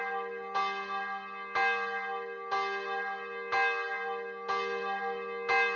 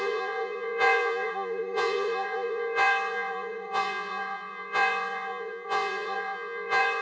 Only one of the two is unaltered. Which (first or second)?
first